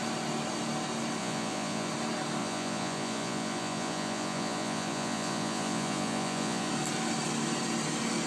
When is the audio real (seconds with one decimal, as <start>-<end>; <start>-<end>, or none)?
0.0-1.2; 1.9-2.4; 6.7-8.3